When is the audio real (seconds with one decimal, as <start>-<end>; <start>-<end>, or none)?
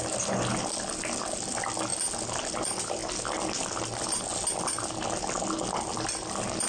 1.9-2.5; 3.0-3.6; 4.3-5.9